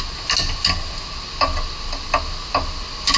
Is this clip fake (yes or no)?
no